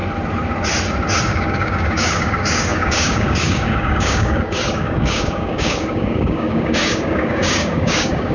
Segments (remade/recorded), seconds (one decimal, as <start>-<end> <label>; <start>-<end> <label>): 0.0-1.2 recorded; 1.2-8.3 remade